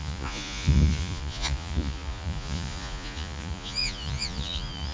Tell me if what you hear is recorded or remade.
remade